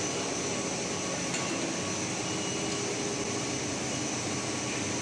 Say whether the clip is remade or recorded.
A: recorded